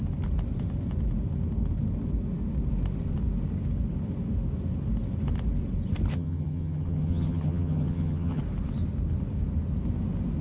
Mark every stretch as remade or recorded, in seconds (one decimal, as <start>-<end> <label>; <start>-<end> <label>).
0.0-6.1 recorded; 6.1-8.4 remade; 8.4-10.4 recorded